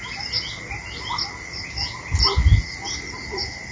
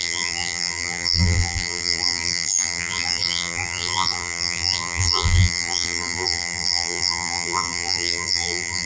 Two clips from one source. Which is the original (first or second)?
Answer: first